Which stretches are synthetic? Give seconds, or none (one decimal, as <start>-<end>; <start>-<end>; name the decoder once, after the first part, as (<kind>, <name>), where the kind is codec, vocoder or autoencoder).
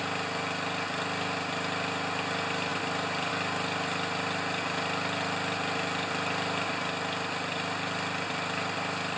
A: none